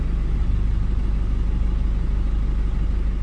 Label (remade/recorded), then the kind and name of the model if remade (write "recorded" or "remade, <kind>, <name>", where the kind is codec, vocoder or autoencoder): recorded